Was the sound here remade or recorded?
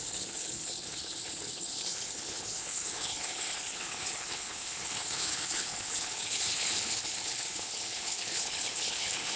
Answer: remade